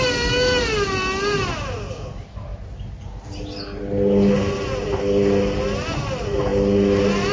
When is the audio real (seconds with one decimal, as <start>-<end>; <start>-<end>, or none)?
0.0-7.3